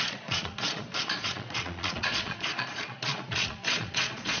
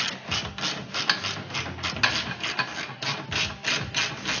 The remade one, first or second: first